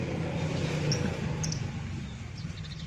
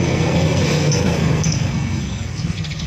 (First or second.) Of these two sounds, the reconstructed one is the second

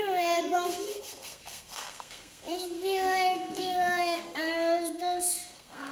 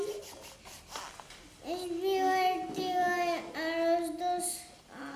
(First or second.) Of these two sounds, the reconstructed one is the first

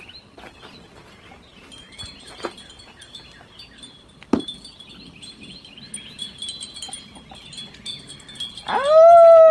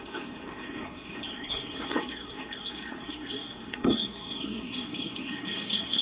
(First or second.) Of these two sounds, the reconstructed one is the second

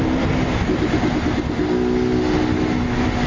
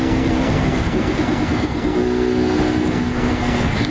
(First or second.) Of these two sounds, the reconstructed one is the second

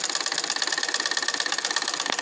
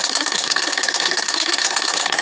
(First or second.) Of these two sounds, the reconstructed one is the second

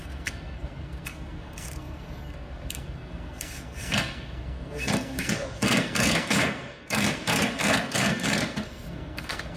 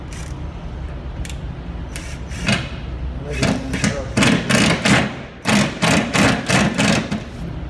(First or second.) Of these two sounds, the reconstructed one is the first